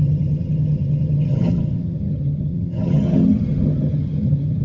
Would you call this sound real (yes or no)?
no